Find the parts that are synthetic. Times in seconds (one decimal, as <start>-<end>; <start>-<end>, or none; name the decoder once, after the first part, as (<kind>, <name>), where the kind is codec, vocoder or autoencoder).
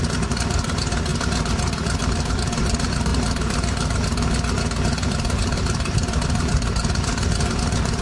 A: 0.0-8.0 (vocoder, BigVGAN v2)